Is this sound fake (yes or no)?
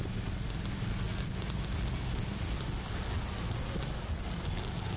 no